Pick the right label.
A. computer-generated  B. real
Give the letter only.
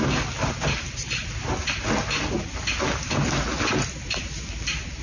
B